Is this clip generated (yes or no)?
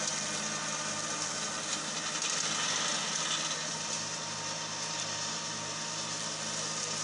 no